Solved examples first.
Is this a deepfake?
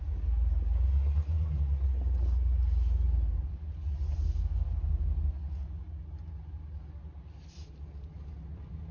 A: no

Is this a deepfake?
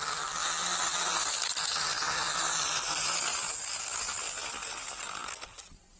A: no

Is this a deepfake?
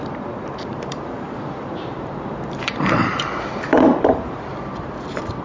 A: yes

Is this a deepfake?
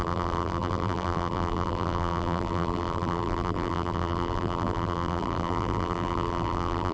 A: yes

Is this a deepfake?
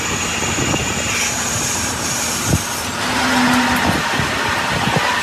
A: no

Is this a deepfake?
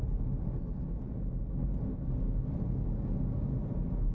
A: no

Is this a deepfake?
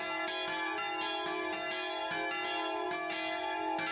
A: no